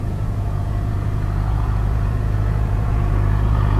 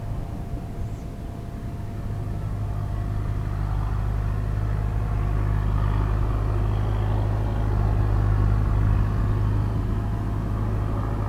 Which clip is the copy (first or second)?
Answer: first